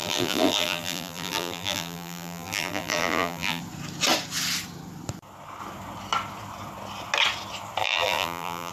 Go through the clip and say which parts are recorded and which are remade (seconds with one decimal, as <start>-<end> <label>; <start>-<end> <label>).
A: 0.0-3.6 remade; 3.6-7.8 recorded; 7.8-8.7 remade